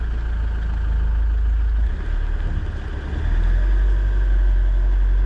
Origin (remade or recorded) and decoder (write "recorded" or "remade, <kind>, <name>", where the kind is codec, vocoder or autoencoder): recorded